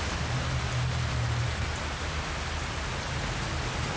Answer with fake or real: real